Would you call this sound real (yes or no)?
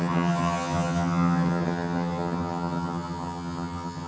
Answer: no